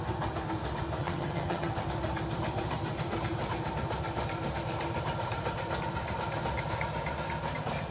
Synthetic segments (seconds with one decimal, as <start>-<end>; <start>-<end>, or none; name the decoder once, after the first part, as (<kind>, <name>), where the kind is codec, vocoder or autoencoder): 1.0-1.7 (vocoder, HiFi-GAN)